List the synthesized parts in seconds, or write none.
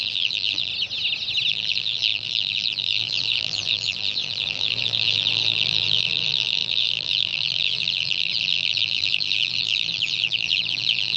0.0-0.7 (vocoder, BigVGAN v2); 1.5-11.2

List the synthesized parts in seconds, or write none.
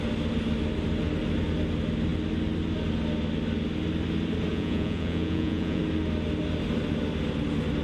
4.5-5.8 (vocoder, Vocos)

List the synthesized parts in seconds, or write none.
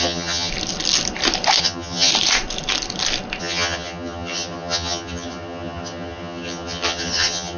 0.0-0.5 (vocoder, HiFi-GAN); 1.6-2.1; 3.4-7.6